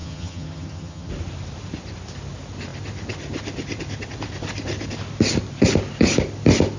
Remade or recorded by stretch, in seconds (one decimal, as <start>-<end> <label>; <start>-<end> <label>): 0.0-1.1 remade; 1.1-6.8 recorded